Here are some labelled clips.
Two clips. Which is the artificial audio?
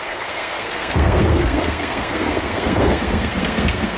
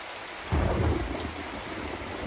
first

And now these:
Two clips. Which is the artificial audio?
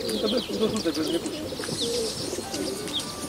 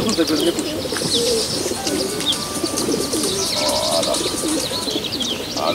second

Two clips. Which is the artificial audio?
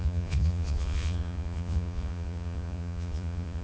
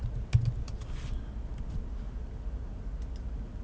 first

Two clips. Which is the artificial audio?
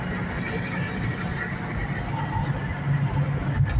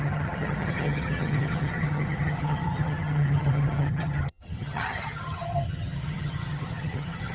second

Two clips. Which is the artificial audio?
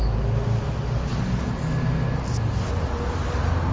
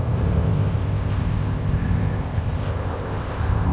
second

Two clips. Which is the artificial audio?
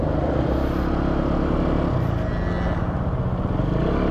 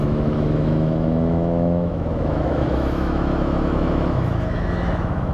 second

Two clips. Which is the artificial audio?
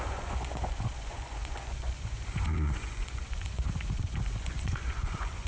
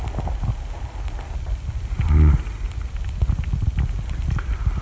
first